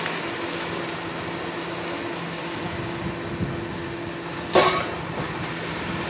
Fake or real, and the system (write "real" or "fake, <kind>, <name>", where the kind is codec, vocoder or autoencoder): real